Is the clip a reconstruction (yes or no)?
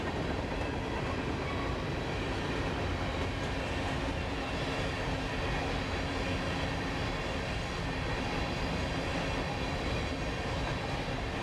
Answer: no